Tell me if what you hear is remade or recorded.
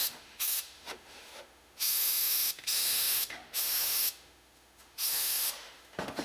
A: remade